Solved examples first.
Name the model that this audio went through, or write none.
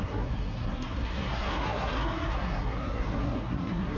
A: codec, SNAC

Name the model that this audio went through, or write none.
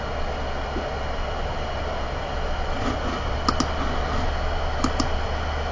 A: none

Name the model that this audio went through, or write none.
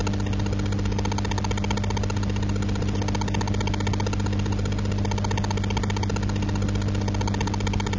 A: none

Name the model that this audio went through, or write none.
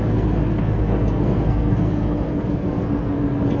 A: codec, SNAC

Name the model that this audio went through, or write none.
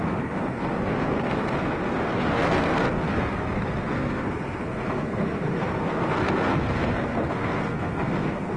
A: codec, SNAC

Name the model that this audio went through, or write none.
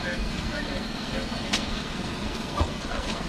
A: codec, SNAC